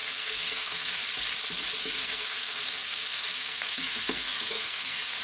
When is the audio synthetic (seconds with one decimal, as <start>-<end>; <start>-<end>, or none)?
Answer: 0.0-1.0; 1.8-5.2